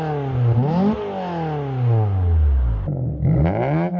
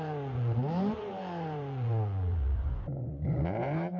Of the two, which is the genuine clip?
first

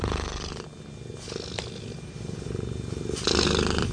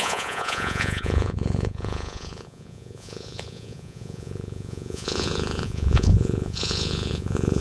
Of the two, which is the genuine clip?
first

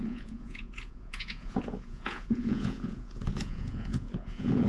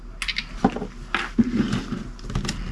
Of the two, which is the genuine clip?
second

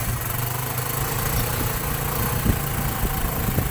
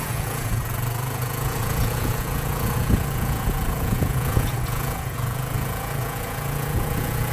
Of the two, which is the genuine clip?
first